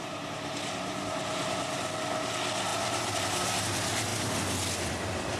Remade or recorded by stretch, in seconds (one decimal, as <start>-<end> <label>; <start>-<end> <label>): 0.0-2.7 recorded; 2.7-3.6 remade; 3.6-5.4 recorded